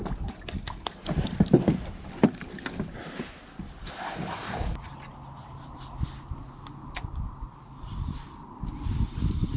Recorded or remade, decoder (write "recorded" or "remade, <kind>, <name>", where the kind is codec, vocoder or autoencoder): recorded